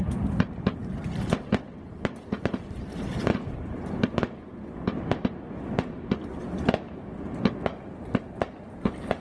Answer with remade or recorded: recorded